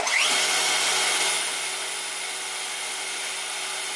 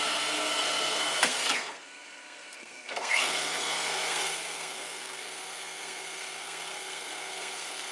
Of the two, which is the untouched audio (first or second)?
first